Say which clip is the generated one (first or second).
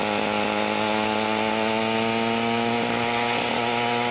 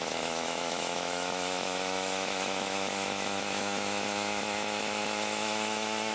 second